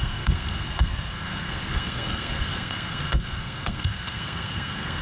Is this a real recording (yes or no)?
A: no